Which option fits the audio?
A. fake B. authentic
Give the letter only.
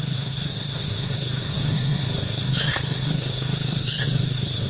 A